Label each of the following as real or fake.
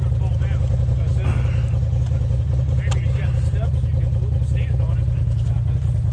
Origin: real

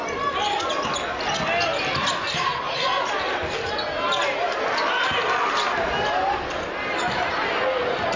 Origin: real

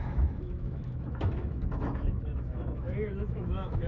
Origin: fake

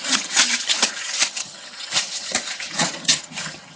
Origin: fake